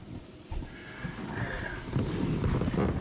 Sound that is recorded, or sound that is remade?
recorded